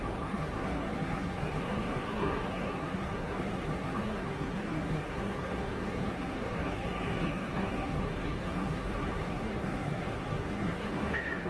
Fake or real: fake